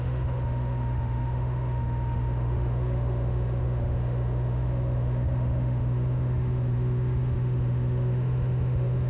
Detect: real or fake fake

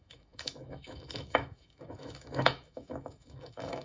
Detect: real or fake fake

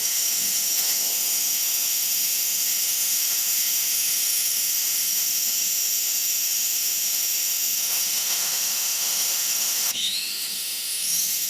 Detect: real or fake fake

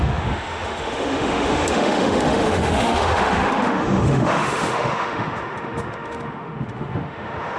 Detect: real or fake fake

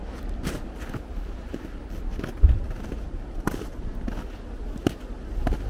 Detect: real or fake real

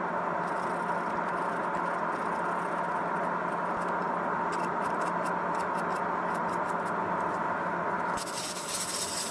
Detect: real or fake real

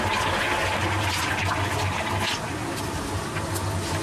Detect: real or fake real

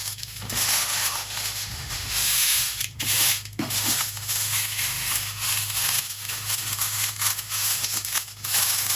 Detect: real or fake fake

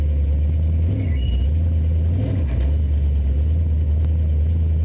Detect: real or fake real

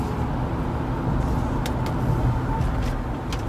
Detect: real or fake real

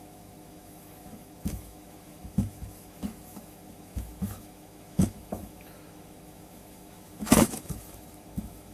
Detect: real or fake fake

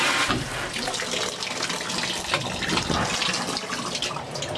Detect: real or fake real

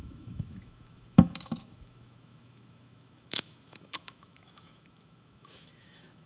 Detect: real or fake fake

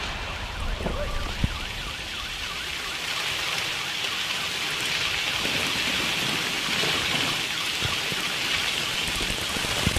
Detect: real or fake real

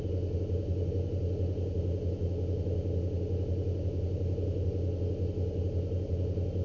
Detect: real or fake real